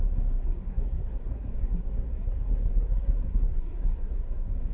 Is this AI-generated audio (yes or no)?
yes